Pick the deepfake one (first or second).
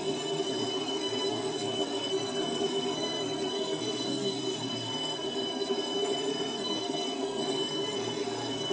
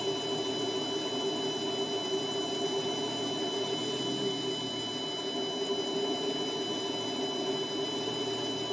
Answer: first